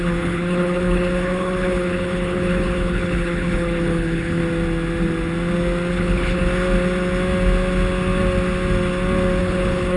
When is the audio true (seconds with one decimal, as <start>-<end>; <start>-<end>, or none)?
4.4-5.9; 6.4-9.4